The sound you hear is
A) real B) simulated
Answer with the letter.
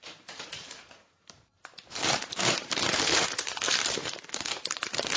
B